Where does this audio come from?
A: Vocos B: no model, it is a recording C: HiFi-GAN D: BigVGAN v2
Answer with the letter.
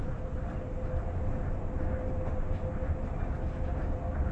B